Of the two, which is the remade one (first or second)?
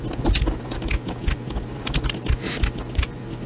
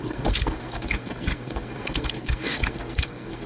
second